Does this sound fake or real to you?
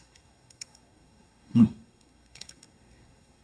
fake